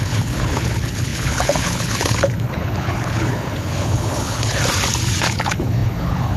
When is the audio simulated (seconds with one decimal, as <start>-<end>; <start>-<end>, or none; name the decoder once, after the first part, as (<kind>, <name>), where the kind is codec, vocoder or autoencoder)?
0.0-4.6 (codec, HILCodec); 5.2-6.4

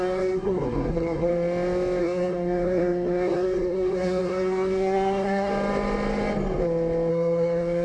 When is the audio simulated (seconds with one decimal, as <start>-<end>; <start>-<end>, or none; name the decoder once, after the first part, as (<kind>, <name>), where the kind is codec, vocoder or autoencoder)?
0.0-1.3 (codec, SNAC); 2.0-5.5; 7.1-7.8